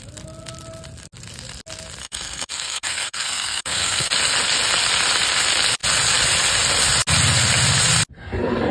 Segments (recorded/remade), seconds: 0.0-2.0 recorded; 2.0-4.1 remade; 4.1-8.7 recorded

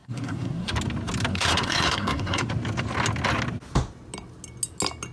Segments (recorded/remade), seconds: 0.0-0.7 remade; 0.7-1.3 recorded; 1.3-2.5 remade; 2.5-5.1 recorded